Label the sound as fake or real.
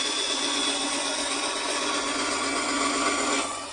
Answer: fake